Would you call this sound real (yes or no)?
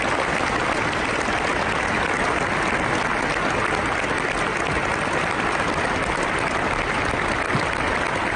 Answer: yes